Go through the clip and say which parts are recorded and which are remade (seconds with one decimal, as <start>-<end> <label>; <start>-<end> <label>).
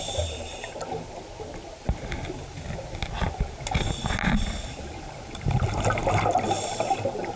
0.0-0.5 remade; 0.5-4.9 recorded; 4.9-6.0 remade; 6.0-6.7 recorded; 6.7-7.4 remade